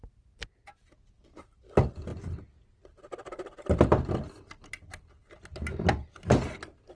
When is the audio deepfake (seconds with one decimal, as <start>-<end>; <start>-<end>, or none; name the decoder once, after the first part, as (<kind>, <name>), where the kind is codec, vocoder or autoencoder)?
none